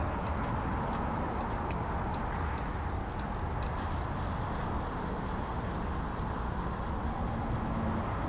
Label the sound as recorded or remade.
recorded